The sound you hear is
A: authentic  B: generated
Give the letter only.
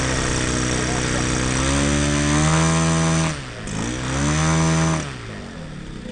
A